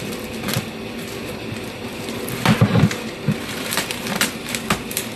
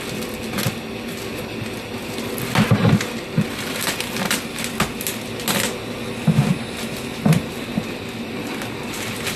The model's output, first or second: first